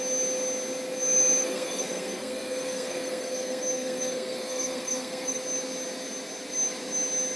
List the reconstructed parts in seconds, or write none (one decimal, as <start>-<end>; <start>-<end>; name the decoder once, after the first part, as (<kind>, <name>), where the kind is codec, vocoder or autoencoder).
1.4-5.4 (codec, SNAC)